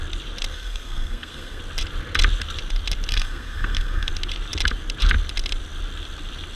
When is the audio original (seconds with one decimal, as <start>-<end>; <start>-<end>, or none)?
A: 0.0-0.5; 1.6-3.1; 4.1-6.6